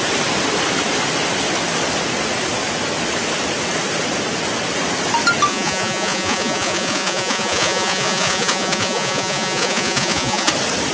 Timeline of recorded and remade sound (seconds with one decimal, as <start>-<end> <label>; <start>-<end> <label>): 0.0-5.5 recorded; 5.5-10.5 remade; 10.5-10.9 recorded